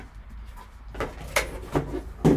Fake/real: real